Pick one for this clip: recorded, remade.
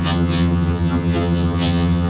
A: remade